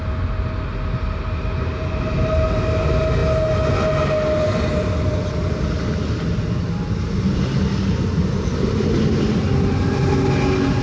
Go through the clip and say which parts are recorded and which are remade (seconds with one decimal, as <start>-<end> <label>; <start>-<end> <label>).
0.0-10.8 recorded